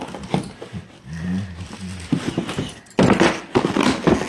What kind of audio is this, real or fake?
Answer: real